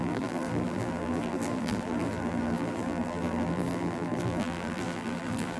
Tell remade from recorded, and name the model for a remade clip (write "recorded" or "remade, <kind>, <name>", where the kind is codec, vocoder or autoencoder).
remade, vocoder, BigVGAN v2